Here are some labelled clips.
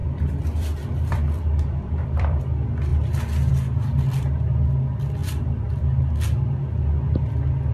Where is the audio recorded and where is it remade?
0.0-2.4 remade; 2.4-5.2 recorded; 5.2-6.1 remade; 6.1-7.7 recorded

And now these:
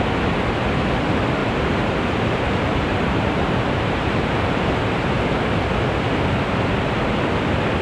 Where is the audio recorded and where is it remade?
0.0-1.4 recorded; 1.4-5.1 remade; 5.1-7.8 recorded

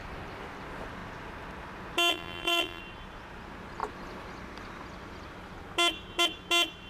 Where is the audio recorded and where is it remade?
0.0-2.1 recorded; 2.1-2.8 remade; 2.8-6.9 recorded

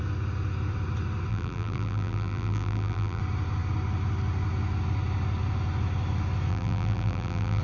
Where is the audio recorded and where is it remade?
0.0-1.3 recorded; 1.3-3.2 remade; 3.2-6.5 recorded; 6.5-7.6 remade